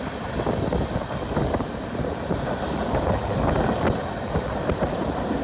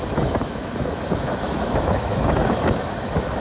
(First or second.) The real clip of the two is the first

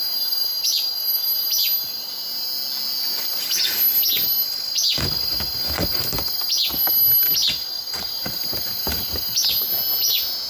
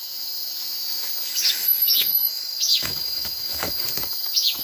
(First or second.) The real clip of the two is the first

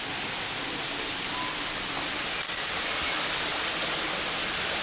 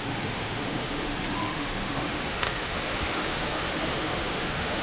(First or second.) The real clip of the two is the first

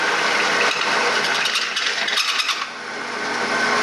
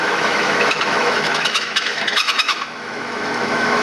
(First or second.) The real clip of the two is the first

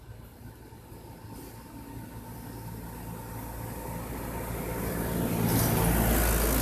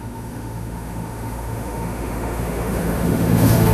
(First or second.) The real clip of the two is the first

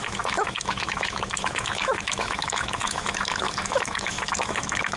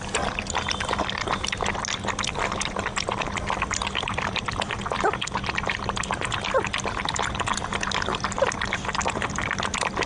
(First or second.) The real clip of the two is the second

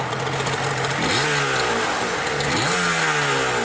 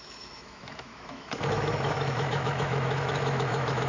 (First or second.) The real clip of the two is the first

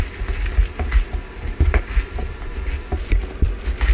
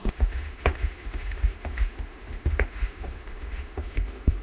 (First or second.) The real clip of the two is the first